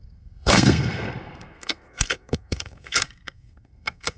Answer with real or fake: fake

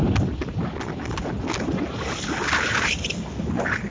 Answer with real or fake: real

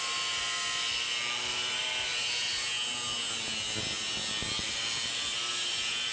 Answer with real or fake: real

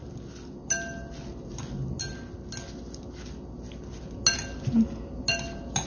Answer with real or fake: real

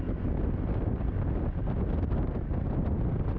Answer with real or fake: real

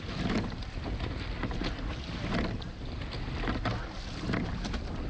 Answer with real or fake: real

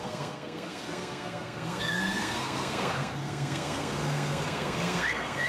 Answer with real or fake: fake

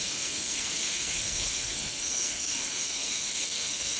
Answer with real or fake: fake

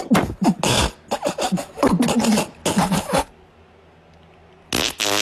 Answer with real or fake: real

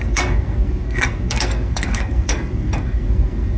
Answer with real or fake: fake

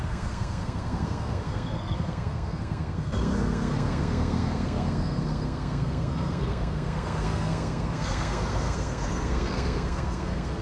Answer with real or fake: fake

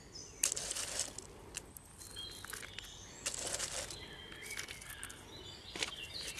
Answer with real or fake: real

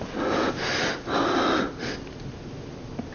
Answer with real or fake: real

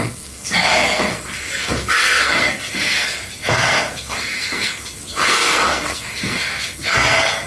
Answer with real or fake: fake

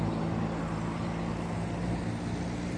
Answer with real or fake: real